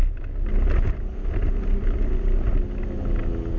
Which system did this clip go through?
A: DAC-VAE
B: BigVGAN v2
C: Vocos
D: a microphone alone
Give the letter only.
D